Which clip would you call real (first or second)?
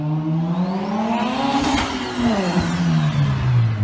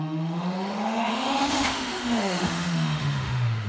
first